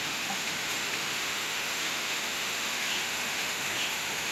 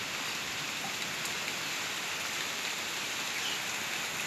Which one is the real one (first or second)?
second